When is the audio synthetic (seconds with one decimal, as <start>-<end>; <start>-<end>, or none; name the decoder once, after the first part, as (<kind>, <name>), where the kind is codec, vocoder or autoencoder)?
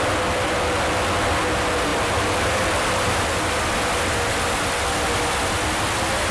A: none